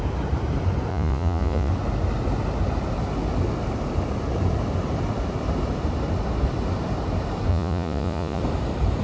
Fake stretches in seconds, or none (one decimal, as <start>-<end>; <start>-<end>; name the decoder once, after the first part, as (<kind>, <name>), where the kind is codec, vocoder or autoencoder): 0.9-1.7 (vocoder, Vocos); 7.5-8.4